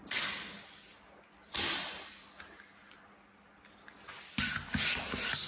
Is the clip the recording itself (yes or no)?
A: yes